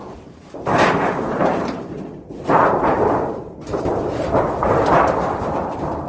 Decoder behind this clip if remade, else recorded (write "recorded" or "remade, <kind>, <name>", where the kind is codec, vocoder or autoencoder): remade, vocoder, BigVGAN v2